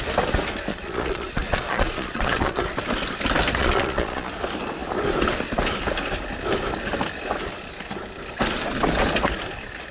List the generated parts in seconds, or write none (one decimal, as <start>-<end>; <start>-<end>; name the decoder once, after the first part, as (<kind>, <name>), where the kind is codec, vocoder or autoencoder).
0.7-2.6 (vocoder, Vocos); 3.6-4.3